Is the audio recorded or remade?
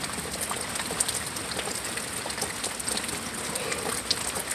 recorded